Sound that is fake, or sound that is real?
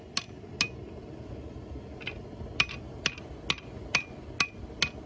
real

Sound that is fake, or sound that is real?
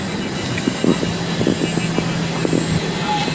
real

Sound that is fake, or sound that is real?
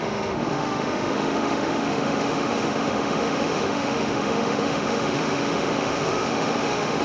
fake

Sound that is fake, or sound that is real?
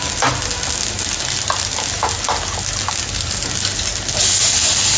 real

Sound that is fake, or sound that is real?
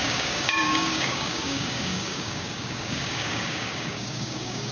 fake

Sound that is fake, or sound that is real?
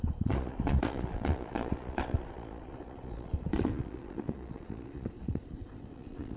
fake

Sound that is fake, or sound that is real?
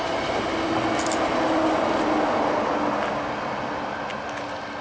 real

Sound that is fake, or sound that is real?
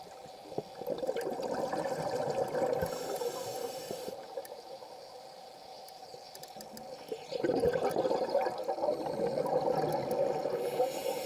real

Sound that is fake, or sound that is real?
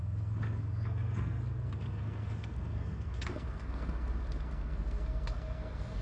fake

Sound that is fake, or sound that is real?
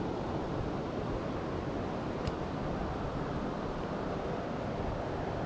fake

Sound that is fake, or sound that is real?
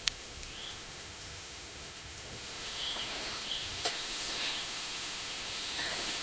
fake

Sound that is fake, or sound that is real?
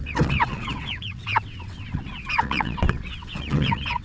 fake